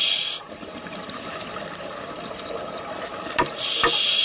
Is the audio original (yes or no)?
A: yes